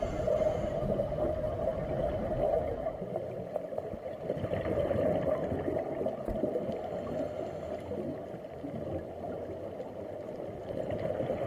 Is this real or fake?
real